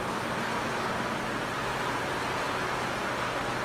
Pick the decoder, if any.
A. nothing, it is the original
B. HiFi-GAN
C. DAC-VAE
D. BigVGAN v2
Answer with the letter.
A